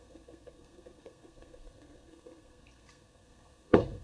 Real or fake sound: fake